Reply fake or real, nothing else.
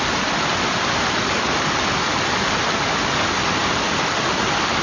real